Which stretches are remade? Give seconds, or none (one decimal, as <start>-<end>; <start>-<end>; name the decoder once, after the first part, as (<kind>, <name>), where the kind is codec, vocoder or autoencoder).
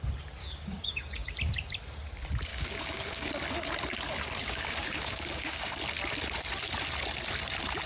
0.4-1.3 (codec, DAC); 2.5-3.3; 4.4-5.7